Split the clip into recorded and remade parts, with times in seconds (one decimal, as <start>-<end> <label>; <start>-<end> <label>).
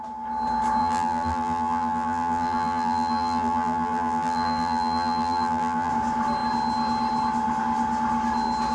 0.0-0.8 recorded; 0.8-5.9 remade; 5.9-8.7 recorded